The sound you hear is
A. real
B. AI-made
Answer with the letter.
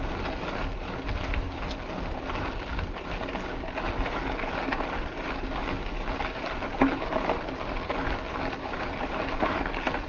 A